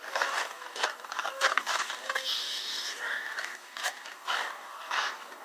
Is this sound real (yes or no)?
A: no